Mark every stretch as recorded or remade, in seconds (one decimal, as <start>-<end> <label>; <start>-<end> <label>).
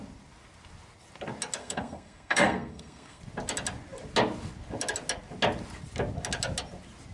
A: 0.0-1.6 recorded; 1.6-3.2 remade; 3.2-7.1 recorded